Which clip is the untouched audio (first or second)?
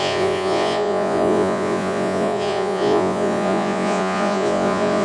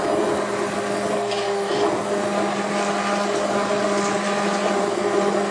second